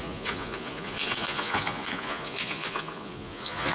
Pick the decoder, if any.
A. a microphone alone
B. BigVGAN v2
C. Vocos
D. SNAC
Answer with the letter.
C